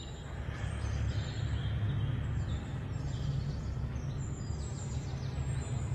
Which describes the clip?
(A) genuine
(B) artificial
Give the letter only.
A